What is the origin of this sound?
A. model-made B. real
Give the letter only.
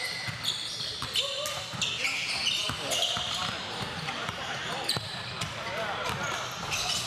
B